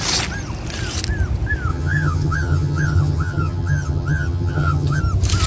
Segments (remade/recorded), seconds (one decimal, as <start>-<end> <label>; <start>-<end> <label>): 0.0-1.7 recorded; 1.7-5.0 remade; 5.0-5.5 recorded